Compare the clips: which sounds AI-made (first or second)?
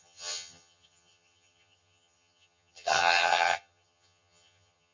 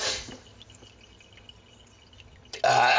first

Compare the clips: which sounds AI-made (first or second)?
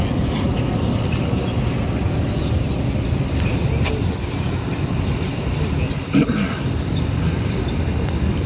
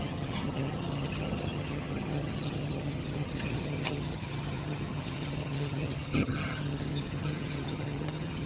second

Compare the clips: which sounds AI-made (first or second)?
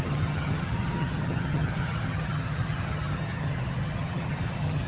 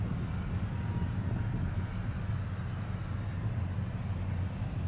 first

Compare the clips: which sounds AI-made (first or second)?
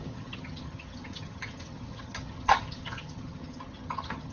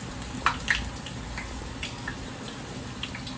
first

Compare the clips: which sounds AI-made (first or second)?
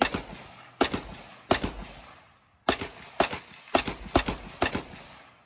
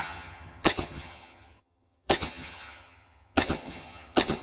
second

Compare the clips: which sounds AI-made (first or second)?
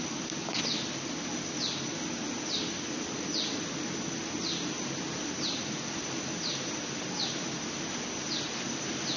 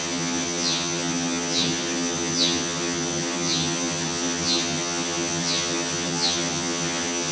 second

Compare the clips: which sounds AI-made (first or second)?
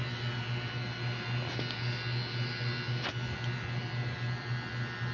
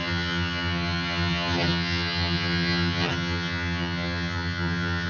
second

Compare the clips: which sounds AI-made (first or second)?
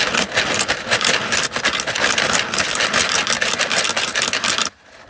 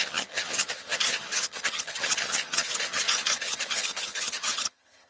second